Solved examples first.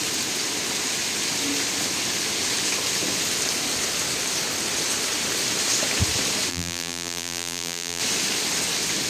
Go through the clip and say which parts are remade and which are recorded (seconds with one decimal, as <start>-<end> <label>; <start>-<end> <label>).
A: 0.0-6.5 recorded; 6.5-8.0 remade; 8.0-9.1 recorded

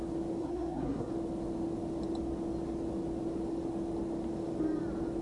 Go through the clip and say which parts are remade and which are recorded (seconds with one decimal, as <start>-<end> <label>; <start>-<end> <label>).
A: 0.0-0.4 recorded; 0.4-1.1 remade; 1.1-5.2 recorded

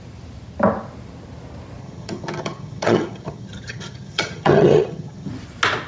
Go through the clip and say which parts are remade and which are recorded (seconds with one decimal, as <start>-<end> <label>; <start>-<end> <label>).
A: 0.0-1.8 recorded; 1.8-5.3 remade; 5.3-5.9 recorded